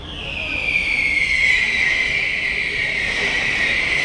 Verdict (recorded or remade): recorded